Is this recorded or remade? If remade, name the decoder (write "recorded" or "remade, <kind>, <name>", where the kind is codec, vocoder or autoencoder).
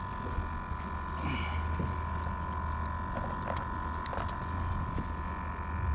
recorded